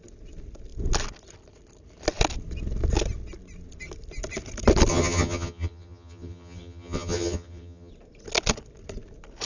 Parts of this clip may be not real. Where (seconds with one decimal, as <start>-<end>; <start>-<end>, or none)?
4.9-7.9